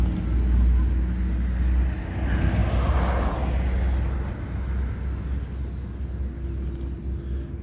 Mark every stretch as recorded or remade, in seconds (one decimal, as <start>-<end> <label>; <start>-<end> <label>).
0.0-7.6 recorded